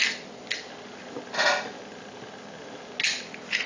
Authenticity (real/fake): real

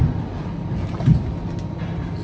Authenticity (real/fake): real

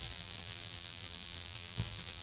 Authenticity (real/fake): fake